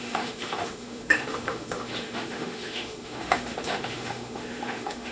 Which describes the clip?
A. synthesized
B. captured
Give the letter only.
A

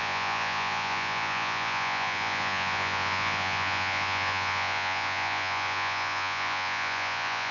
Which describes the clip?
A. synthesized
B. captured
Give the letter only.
A